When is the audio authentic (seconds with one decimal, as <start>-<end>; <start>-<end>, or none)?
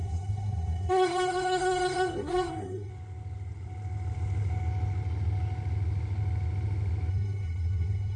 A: 2.9-7.1